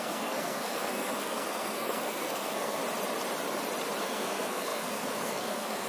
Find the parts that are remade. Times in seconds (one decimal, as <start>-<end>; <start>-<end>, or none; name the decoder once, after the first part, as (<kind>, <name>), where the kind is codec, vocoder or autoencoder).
0.0-2.8 (codec, SNAC); 4.0-5.9